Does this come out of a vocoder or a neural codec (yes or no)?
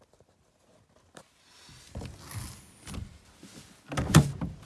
no